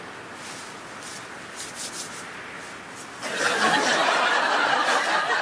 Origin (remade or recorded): recorded